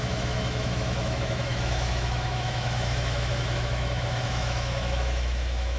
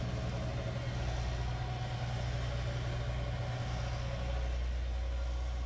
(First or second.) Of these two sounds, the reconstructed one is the first